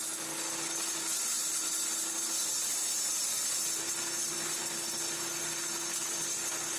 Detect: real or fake real